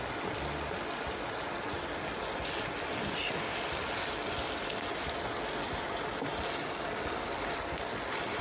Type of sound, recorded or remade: recorded